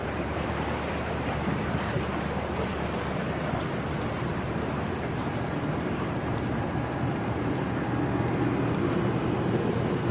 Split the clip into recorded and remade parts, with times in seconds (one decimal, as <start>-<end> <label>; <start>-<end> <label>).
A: 0.0-1.7 remade; 1.7-4.3 recorded; 4.3-7.5 remade; 7.5-10.1 recorded